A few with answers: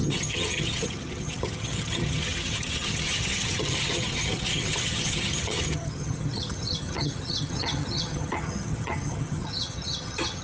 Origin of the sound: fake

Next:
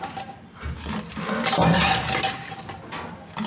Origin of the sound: real